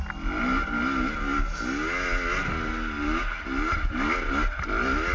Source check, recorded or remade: recorded